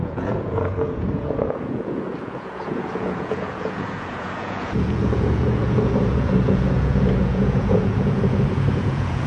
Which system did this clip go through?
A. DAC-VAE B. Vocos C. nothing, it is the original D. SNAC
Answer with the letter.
B